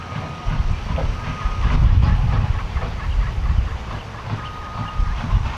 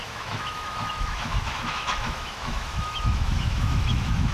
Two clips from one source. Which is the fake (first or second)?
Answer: second